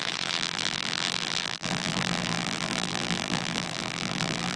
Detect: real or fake fake